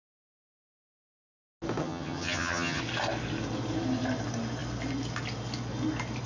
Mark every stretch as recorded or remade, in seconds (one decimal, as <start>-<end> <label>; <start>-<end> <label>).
0.0-1.8 recorded; 1.8-2.8 remade; 2.8-6.3 recorded